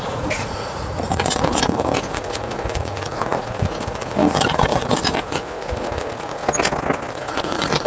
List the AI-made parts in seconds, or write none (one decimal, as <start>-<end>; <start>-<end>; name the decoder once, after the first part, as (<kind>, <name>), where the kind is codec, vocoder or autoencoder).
0.0-6.4 (vocoder, Vocos); 7.1-7.9